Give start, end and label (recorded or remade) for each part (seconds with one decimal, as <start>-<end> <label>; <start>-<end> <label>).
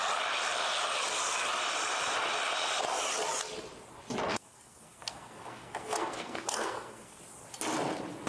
0.0-4.3 recorded; 4.3-7.2 remade; 7.2-8.3 recorded